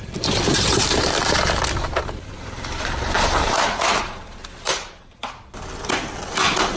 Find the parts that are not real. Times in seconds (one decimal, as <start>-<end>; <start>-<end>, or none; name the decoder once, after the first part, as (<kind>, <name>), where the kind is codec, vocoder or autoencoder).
0.0-5.2 (vocoder, BigVGAN v2); 6.3-6.8